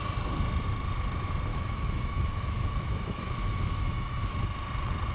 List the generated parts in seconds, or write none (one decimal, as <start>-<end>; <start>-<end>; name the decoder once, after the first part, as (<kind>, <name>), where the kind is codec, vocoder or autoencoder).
1.5-4.3 (autoencoder, DAC-VAE)